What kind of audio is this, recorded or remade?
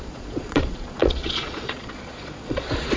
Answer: remade